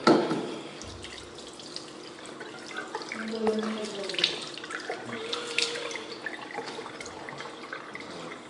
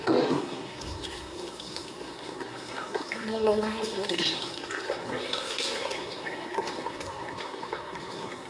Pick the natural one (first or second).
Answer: first